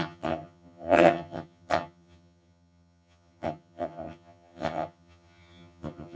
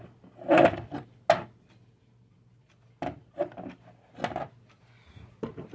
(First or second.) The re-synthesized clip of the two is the first